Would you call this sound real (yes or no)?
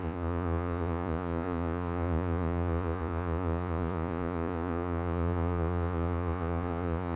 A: no